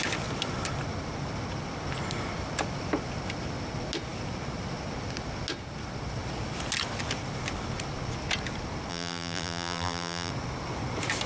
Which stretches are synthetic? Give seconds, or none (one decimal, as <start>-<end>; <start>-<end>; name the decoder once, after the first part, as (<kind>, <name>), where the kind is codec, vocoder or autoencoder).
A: 8.9-10.3 (vocoder, BigVGAN v2)